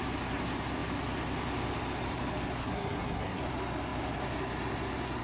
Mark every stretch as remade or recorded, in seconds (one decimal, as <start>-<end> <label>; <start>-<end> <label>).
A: 0.0-2.6 recorded; 2.6-3.4 remade; 3.4-5.2 recorded